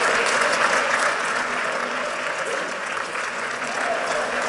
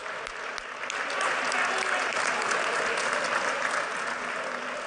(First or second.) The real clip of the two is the second